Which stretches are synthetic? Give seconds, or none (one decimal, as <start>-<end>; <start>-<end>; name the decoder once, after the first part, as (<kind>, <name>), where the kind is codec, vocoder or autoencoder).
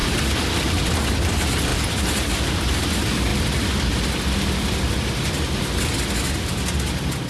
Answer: 0.0-0.9 (vocoder, BigVGAN v2); 1.7-2.8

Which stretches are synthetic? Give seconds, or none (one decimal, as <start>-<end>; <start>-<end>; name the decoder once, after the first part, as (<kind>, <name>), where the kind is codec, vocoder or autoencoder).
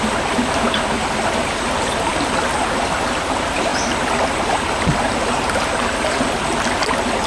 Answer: none